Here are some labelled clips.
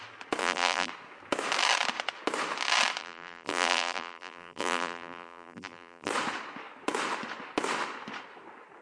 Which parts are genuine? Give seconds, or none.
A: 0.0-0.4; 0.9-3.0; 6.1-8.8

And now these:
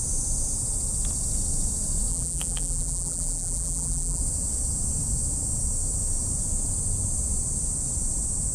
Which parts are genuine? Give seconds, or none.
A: 0.0-2.1; 4.2-8.5